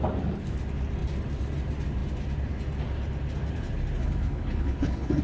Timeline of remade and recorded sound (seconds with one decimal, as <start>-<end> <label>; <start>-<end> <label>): 0.0-4.0 recorded; 4.0-5.2 remade